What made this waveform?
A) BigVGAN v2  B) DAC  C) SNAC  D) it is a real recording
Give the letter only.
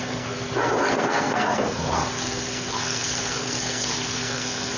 C